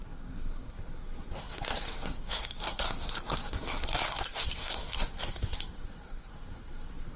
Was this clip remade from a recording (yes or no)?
yes